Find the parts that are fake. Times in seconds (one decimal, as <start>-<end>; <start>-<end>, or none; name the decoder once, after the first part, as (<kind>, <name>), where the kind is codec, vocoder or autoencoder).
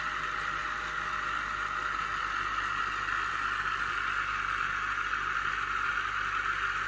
none